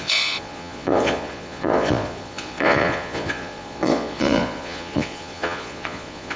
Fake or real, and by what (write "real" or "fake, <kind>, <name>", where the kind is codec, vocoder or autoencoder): fake, vocoder, Vocos